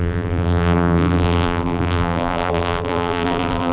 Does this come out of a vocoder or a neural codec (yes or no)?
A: yes